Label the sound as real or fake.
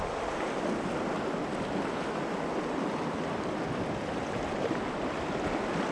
real